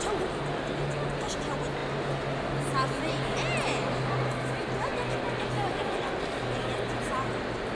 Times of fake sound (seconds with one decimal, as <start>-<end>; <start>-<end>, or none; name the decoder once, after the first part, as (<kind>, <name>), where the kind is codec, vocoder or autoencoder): none